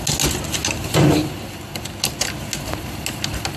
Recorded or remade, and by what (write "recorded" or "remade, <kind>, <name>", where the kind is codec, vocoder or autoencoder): recorded